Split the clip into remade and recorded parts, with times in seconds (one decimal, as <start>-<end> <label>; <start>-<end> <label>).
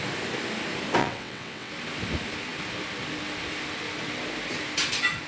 0.0-1.0 recorded; 1.0-1.7 remade; 1.7-5.3 recorded